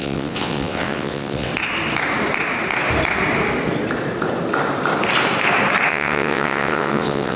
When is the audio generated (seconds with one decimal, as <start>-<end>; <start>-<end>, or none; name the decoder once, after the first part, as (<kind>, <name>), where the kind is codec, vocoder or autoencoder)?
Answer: 0.0-1.5 (vocoder, WaveNeXt); 5.9-7.4